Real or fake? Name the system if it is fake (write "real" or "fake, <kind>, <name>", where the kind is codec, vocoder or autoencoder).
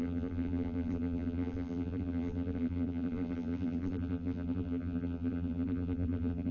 fake, vocoder, BigVGAN v2